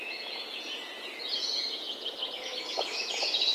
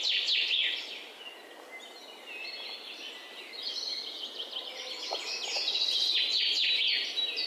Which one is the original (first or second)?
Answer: second